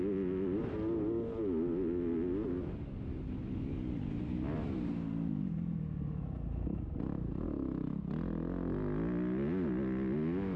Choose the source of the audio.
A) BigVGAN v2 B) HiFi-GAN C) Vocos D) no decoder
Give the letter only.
D